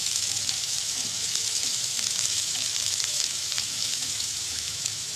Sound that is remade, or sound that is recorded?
remade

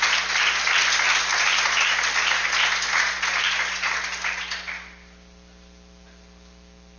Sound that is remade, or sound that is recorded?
recorded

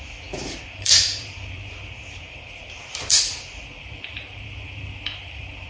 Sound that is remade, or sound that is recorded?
remade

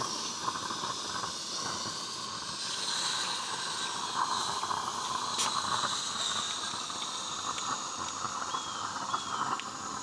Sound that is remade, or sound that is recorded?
recorded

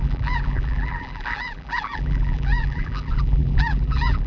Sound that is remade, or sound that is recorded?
remade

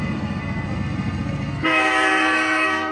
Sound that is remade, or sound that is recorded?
remade